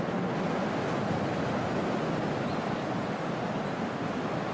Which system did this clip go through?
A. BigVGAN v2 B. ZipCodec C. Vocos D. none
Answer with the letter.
D